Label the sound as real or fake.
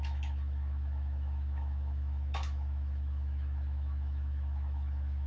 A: fake